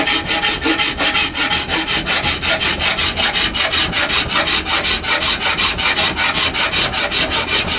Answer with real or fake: real